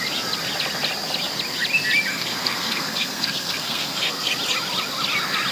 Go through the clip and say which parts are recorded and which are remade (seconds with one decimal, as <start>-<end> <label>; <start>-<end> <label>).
0.0-2.1 recorded; 2.1-4.3 remade; 4.3-5.5 recorded